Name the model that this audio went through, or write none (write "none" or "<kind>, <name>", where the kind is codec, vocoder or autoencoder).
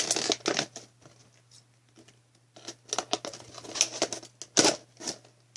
none